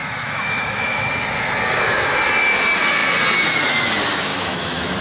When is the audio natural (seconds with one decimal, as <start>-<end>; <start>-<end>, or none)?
1.1-4.3